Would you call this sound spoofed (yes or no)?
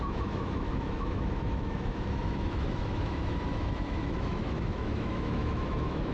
yes